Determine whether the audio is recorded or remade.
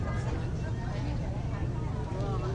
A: recorded